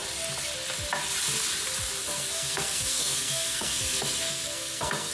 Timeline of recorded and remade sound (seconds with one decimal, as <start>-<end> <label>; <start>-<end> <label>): 0.0-2.0 recorded; 2.0-5.1 remade